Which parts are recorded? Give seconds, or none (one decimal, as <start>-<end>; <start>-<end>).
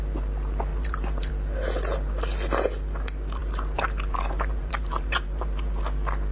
0.0-0.7; 1.3-3.4; 5.8-6.3